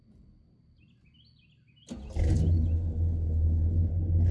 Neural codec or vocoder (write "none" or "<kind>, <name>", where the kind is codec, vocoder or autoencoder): none